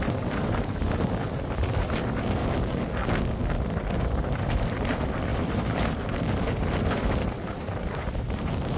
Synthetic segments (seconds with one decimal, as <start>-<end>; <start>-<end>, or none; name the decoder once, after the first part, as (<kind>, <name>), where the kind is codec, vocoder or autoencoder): 0.0-2.4 (vocoder, BigVGAN v2); 3.9-8.8